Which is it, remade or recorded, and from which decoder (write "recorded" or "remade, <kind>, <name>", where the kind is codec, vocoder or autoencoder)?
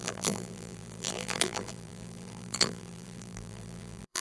remade, vocoder, BigVGAN v2